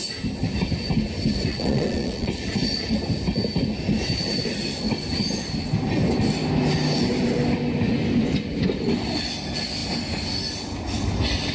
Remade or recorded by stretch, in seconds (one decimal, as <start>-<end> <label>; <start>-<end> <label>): 0.0-1.5 recorded; 1.5-2.3 remade; 2.3-11.5 recorded